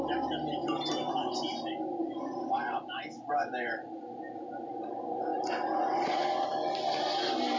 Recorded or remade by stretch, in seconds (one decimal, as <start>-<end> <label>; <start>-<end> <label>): 0.0-7.6 recorded